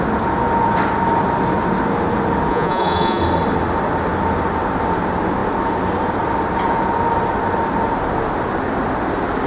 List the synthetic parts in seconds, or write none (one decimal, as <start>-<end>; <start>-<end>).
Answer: 2.5-3.2